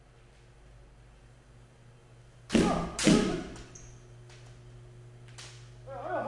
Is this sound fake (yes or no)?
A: no